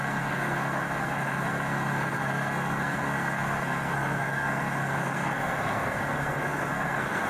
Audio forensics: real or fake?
fake